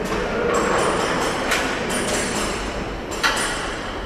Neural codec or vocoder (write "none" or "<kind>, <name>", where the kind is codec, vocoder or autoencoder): none